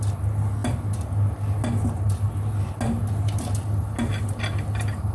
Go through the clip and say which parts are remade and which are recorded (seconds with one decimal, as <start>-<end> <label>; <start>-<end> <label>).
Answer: 0.0-5.1 recorded